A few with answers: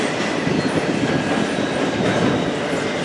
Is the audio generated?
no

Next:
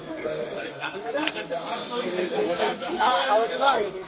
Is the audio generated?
yes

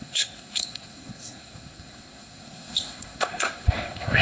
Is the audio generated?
yes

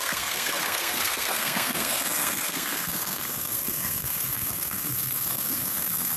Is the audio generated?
yes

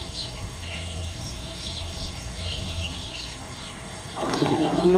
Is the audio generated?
yes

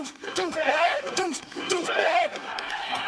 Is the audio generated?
yes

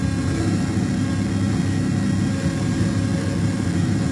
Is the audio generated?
no